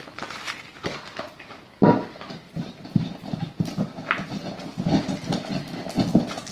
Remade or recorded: recorded